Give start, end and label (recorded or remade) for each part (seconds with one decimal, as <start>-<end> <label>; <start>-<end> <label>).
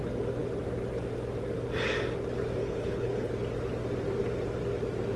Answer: 0.0-2.6 recorded; 2.6-3.3 remade; 3.3-5.2 recorded